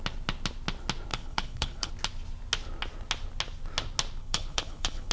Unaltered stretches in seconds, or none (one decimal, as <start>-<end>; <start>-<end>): 0.0-1.1; 1.9-4.2